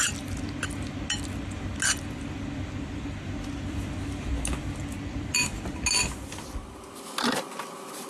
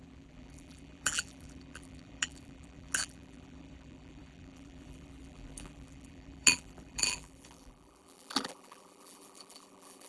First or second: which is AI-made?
second